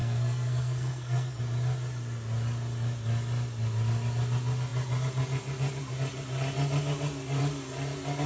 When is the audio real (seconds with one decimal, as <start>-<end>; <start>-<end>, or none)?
1.4-8.3